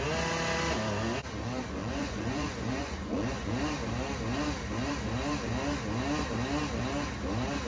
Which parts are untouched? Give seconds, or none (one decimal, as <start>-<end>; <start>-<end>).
0.0-1.8; 3.5-7.7